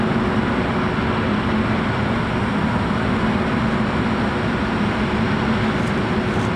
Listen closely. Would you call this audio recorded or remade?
recorded